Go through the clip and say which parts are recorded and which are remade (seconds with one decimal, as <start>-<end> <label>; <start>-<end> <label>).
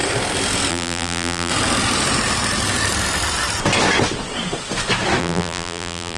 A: 0.0-0.7 recorded; 0.7-1.5 remade; 1.5-5.2 recorded; 5.2-6.2 remade